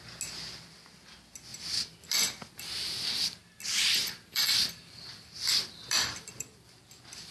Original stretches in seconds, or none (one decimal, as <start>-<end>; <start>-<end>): 0.0-1.5; 2.7-4.0; 6.8-7.3